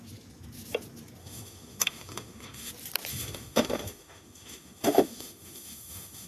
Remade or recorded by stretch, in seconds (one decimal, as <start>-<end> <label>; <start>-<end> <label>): 0.0-1.2 recorded; 1.2-2.7 remade; 2.7-3.1 recorded; 3.1-6.3 remade